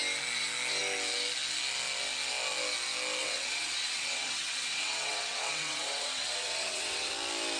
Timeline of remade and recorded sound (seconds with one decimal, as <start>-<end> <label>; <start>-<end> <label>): 0.0-3.2 recorded; 3.2-7.1 remade; 7.1-7.6 recorded